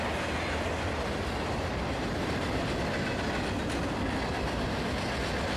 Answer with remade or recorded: recorded